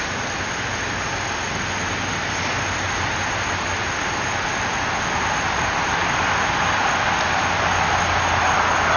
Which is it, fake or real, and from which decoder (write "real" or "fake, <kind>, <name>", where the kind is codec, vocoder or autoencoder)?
real